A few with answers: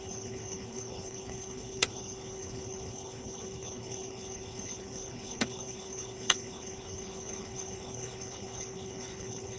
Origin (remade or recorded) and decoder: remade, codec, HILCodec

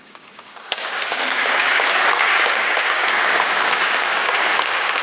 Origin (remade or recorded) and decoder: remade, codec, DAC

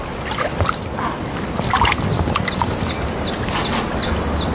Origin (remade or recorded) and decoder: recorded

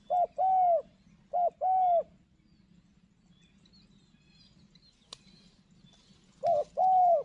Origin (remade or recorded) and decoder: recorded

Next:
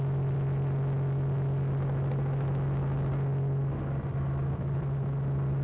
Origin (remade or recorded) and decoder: recorded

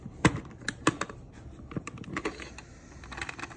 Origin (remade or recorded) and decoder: recorded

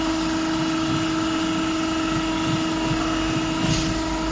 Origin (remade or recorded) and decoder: recorded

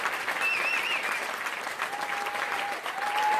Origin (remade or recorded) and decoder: recorded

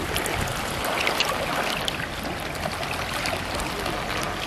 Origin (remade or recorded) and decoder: recorded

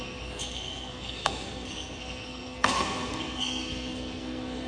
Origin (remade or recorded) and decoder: remade, codec, SNAC